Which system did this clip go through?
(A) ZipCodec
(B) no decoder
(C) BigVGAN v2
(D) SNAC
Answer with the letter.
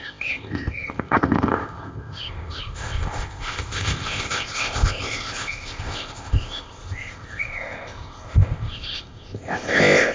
A